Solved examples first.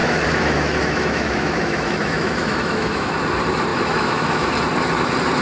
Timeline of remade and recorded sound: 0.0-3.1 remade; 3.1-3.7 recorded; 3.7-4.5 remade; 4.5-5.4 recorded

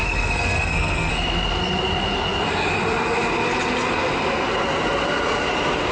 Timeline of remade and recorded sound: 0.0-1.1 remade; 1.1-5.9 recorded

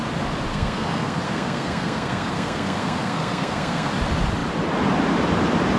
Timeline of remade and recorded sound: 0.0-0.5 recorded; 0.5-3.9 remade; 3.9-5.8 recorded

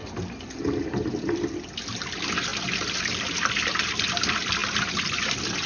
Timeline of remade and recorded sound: 0.0-5.7 recorded

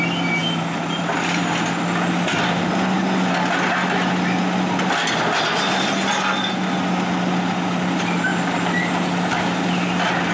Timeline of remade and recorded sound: 0.0-10.3 recorded